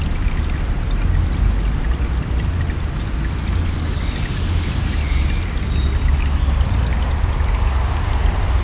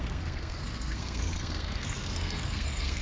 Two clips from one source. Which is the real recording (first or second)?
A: first